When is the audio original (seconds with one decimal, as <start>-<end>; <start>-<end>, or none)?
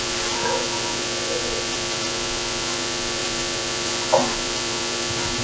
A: none